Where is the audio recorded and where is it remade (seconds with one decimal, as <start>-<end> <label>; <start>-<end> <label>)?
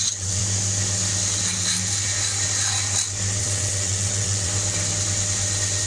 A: 0.0-0.4 remade; 0.4-3.4 recorded; 3.4-4.5 remade; 4.5-5.9 recorded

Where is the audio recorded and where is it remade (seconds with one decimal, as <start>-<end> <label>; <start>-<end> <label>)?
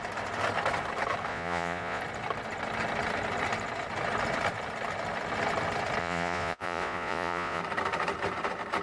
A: 0.0-1.3 recorded; 1.3-2.0 remade; 2.0-6.0 recorded; 6.0-7.6 remade; 7.6-8.8 recorded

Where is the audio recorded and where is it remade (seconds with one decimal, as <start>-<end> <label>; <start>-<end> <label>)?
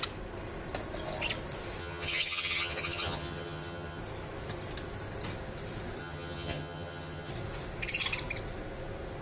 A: 0.0-1.8 recorded; 1.8-4.0 remade; 4.0-6.0 recorded; 6.0-7.3 remade; 7.3-9.2 recorded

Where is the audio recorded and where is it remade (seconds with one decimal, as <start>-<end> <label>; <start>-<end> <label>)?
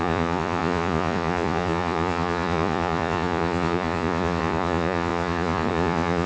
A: 0.0-6.3 remade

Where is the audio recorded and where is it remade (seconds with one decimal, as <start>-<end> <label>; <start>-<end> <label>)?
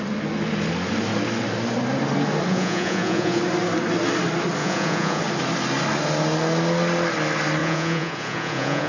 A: 0.0-2.5 recorded; 2.5-3.4 remade; 3.4-4.6 recorded; 4.6-5.2 remade; 5.2-7.6 recorded; 7.6-8.9 remade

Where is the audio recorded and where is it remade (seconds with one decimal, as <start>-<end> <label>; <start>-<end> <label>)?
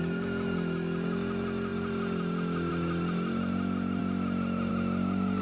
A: 0.0-5.4 recorded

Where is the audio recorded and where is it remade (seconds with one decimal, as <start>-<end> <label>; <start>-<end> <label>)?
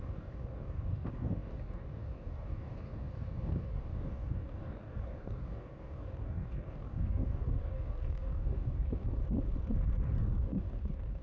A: 0.0-9.2 remade; 9.2-10.4 recorded; 10.4-11.2 remade